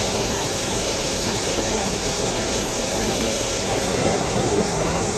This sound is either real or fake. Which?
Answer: fake